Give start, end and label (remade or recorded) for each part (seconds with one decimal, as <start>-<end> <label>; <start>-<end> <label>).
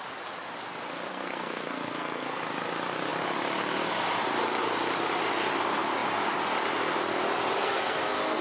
0.0-1.1 recorded; 1.1-2.4 remade; 2.4-7.6 recorded; 7.6-8.4 remade